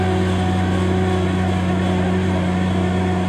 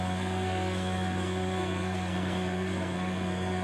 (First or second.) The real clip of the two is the first